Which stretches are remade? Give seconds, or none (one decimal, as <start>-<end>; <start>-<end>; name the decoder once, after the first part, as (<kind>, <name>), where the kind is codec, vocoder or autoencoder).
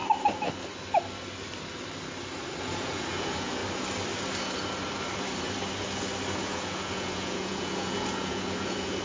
2.6-3.6 (vocoder, Vocos); 6.4-9.0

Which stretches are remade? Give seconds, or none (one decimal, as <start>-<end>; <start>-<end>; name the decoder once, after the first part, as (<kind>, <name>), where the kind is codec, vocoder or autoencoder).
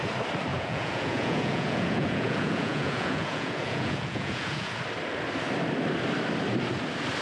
0.5-4.8 (vocoder, Vocos)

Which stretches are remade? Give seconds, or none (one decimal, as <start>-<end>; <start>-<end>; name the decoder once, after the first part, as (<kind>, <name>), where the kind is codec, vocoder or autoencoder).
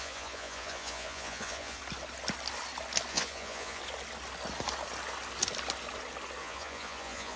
0.0-1.8 (vocoder, Vocos); 3.1-3.8; 6.4-7.4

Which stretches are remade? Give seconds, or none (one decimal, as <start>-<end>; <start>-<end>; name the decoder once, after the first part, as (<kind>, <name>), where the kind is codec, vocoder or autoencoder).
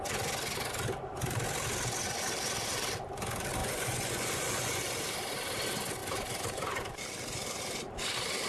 3.6-4.8 (vocoder, Vocos)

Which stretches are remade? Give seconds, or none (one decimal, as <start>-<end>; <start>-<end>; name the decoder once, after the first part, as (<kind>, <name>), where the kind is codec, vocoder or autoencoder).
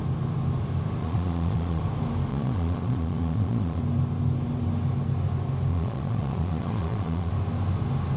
1.0-1.8 (vocoder, Vocos); 2.3-3.8; 5.7-7.3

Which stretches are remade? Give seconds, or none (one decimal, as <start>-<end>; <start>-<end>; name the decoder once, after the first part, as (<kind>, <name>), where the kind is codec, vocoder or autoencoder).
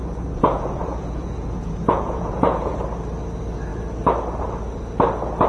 0.0-2.7 (vocoder, Vocos)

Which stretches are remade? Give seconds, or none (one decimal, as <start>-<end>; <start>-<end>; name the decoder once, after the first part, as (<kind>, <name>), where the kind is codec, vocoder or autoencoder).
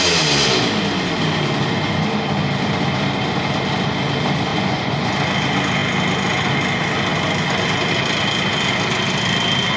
4.5-5.1 (vocoder, Vocos)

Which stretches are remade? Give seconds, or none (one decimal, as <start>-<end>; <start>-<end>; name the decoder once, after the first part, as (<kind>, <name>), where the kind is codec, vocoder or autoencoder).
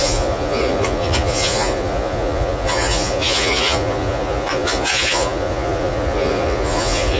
0.0-7.2 (vocoder, Vocos)